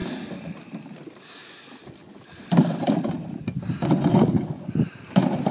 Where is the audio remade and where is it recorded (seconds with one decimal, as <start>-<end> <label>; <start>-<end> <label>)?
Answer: 0.0-5.5 recorded